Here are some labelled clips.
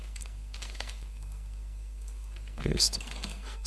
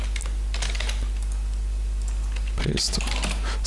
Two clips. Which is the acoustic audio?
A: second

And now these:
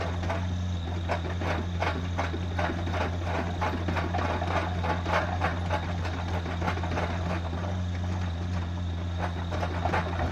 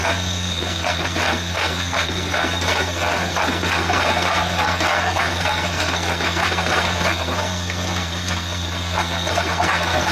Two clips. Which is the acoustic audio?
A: first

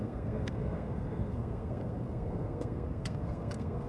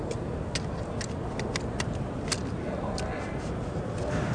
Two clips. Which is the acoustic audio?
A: second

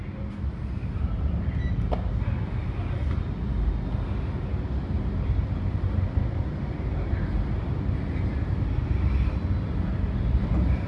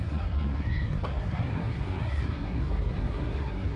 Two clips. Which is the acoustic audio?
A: first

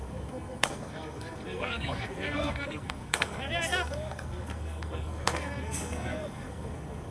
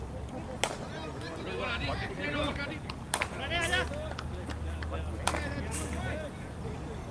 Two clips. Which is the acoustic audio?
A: second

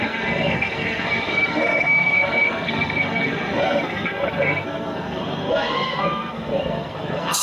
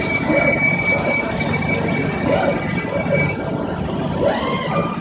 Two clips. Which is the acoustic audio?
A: second